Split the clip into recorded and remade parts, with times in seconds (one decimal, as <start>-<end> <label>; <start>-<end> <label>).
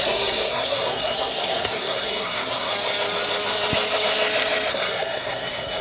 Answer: 0.0-2.7 remade; 2.7-4.7 recorded; 4.7-5.8 remade